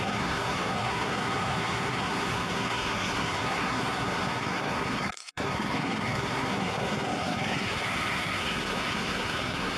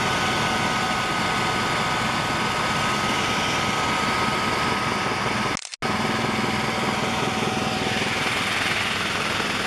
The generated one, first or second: first